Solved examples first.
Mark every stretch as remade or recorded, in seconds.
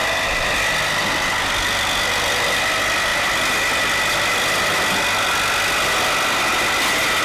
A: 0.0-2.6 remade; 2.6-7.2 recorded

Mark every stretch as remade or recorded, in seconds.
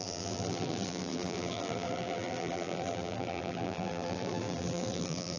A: 0.0-5.4 remade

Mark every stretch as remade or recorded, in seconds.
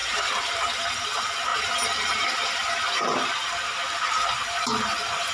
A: 0.0-0.8 remade; 0.8-1.5 recorded; 1.5-3.3 remade; 3.3-5.3 recorded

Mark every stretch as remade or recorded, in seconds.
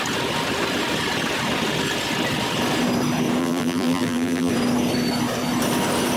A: 0.0-3.4 recorded; 3.4-4.5 remade; 4.5-6.2 recorded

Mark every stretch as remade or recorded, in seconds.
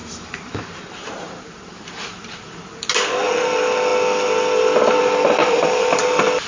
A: 0.0-2.9 remade; 2.9-5.4 recorded; 5.4-6.0 remade; 6.0-6.5 recorded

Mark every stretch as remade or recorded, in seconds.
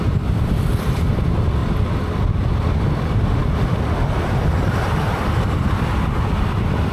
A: 0.0-1.6 remade; 1.6-2.8 recorded; 2.8-6.9 remade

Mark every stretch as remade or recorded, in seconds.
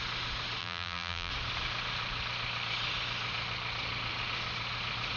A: 0.0-0.6 recorded; 0.6-1.3 remade; 1.3-5.2 recorded